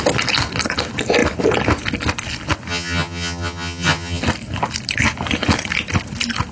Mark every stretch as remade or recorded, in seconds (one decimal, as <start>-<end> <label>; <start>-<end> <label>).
0.0-2.7 recorded; 2.7-4.2 remade; 4.2-6.5 recorded